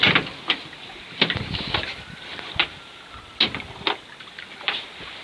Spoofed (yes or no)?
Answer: no